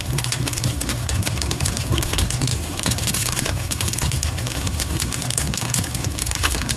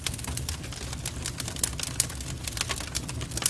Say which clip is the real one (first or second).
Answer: second